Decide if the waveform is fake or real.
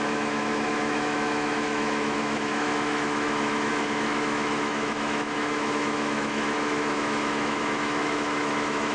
fake